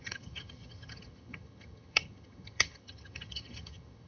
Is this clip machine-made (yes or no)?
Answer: yes